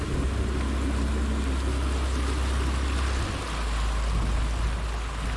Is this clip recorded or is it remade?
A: recorded